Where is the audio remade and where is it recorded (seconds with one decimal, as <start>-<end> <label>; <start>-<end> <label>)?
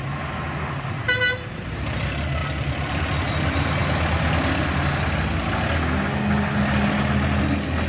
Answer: 0.0-7.9 recorded